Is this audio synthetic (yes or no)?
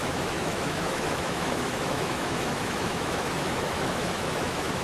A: yes